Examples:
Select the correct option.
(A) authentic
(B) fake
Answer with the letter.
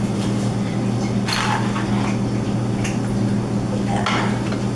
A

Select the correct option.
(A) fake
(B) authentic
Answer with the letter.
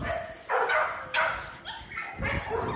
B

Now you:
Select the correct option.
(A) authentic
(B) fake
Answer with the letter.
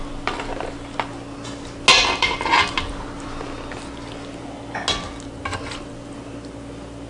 A